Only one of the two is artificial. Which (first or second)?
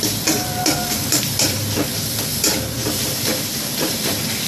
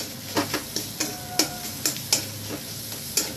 first